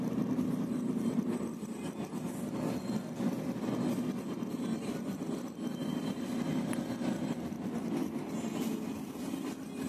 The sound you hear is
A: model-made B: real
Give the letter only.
B